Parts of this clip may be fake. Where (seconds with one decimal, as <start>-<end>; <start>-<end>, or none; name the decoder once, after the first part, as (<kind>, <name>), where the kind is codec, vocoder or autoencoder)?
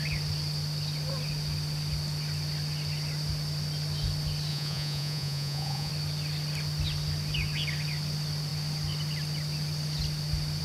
4.5-5.9 (vocoder, Vocos)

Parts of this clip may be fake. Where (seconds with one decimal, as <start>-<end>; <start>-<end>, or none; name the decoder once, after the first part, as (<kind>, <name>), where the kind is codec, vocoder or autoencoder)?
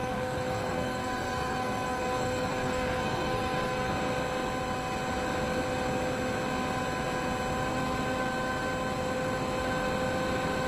0.0-3.9 (codec, SNAC)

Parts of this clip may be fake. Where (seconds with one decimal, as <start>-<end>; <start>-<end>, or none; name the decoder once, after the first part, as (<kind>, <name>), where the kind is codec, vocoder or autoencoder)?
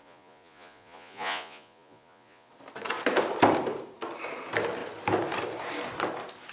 0.0-2.5 (vocoder, Vocos)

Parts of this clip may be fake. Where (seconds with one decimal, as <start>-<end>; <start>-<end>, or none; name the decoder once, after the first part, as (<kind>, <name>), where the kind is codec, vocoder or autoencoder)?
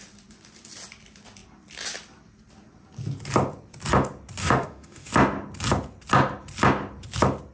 4.4-5.1 (autoencoder, DAC-VAE)